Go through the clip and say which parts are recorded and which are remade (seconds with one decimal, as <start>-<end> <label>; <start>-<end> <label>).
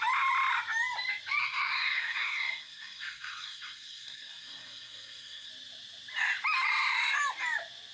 0.0-1.4 recorded; 1.4-5.5 remade; 5.5-7.9 recorded